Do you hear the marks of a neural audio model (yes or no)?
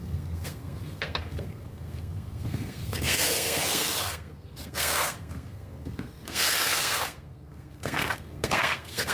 yes